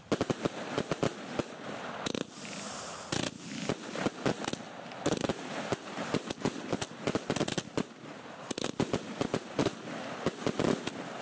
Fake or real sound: real